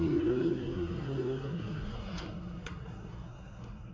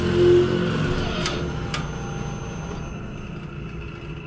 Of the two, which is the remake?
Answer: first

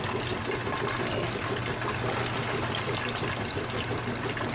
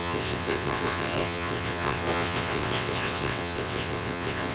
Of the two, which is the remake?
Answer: second